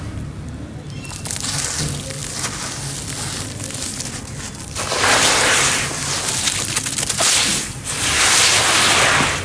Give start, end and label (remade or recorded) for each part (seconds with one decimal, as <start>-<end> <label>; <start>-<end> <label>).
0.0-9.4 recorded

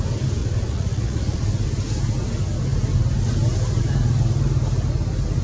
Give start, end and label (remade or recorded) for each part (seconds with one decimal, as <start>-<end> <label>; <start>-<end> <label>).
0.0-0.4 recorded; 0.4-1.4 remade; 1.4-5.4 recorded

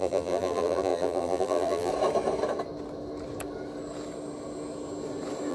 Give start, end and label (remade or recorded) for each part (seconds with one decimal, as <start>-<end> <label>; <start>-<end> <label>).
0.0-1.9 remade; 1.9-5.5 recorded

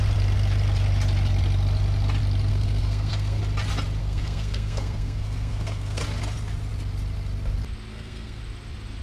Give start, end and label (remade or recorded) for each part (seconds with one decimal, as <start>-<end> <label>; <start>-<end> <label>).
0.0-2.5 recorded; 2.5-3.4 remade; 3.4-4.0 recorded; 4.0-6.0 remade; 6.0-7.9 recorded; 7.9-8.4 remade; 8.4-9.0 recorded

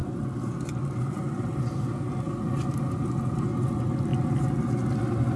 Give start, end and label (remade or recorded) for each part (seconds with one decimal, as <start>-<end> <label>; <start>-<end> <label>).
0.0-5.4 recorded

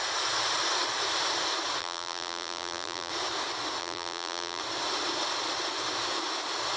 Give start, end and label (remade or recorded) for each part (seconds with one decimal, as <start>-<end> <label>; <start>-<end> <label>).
0.0-1.8 recorded; 1.8-3.1 remade; 3.1-3.8 recorded; 3.8-4.6 remade; 4.6-6.8 recorded

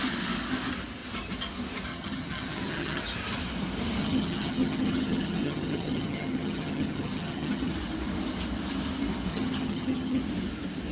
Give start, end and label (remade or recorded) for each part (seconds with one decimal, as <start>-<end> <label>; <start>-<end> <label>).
0.0-1.9 recorded; 1.9-3.0 remade; 3.0-4.0 recorded; 4.0-7.7 remade; 7.7-9.3 recorded; 9.3-10.2 remade; 10.2-10.9 recorded

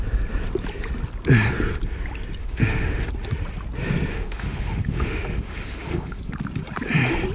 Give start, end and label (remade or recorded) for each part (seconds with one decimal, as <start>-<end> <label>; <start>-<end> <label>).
0.0-2.4 recorded; 2.4-3.1 remade; 3.1-4.1 recorded; 4.1-6.2 remade; 6.2-7.3 recorded